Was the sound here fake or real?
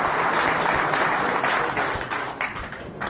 real